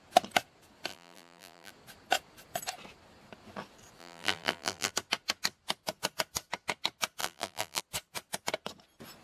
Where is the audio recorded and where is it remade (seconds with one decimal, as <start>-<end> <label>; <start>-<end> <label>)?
0.0-0.9 recorded; 0.9-1.7 remade; 1.7-4.0 recorded; 4.0-4.9 remade; 4.9-7.2 recorded; 7.2-7.8 remade; 7.8-9.2 recorded